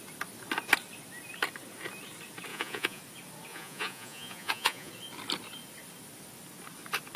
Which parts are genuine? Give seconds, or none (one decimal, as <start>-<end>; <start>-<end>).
0.0-2.5; 3.0-3.5; 4.9-7.2